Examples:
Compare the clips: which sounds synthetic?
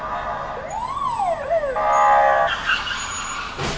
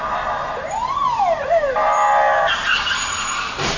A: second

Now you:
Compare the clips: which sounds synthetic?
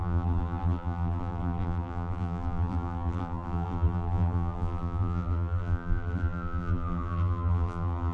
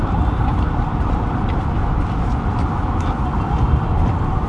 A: first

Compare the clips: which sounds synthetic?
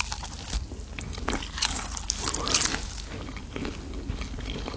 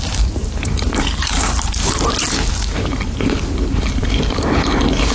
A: second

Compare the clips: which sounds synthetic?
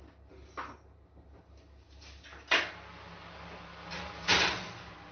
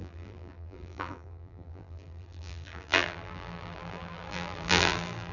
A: second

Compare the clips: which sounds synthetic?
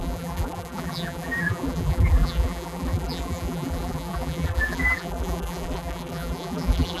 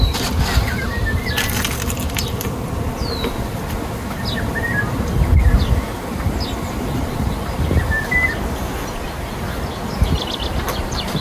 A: first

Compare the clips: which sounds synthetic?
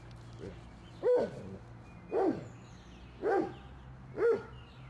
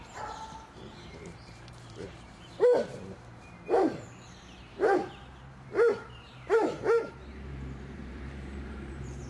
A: second